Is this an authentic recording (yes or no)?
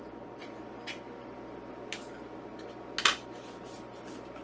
yes